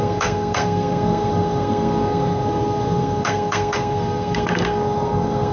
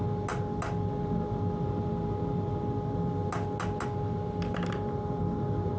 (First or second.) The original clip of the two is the second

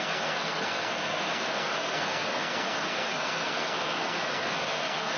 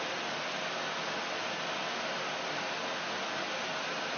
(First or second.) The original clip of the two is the second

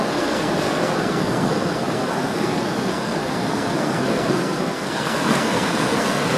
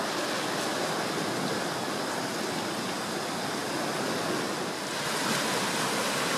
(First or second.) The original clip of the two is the second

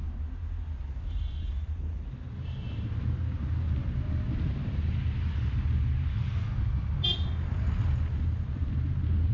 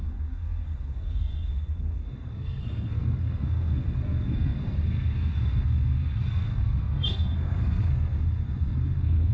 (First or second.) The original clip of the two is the first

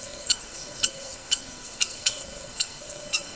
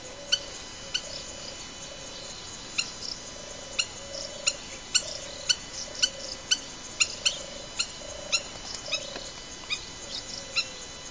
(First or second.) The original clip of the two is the second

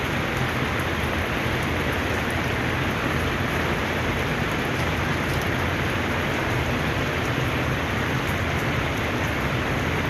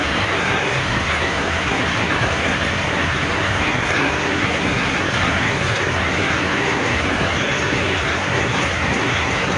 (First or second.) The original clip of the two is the first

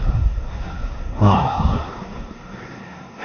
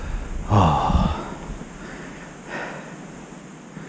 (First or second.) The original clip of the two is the second